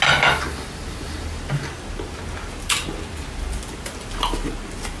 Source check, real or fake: real